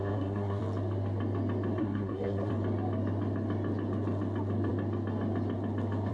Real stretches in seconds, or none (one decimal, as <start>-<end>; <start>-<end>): 0.6-1.8; 2.5-6.1